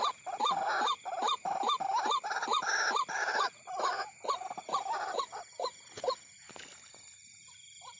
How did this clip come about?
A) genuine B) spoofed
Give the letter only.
A